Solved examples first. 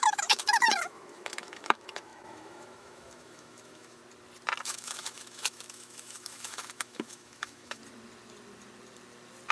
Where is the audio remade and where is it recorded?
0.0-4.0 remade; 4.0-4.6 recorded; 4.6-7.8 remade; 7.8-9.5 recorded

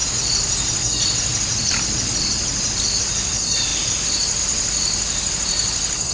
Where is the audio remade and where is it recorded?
0.0-6.1 recorded

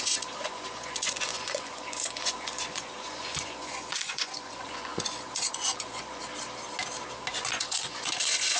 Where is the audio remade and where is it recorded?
0.0-6.2 remade; 6.2-7.3 recorded; 7.3-8.6 remade

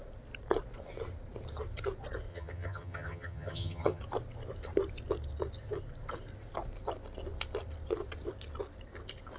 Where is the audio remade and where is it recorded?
0.0-2.3 recorded; 2.3-4.0 remade; 4.0-9.4 recorded

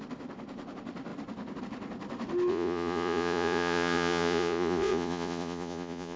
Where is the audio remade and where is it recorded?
0.0-2.5 recorded; 2.5-6.2 remade

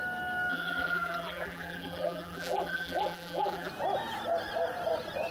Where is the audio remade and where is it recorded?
0.0-0.5 recorded; 0.5-3.7 remade; 3.7-5.3 recorded

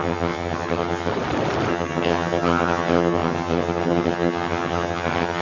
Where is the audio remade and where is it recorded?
0.0-1.1 remade; 1.1-1.7 recorded; 1.7-5.4 remade

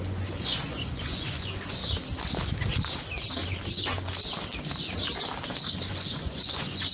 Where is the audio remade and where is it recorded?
0.0-1.8 remade; 1.8-5.9 recorded; 5.9-6.9 remade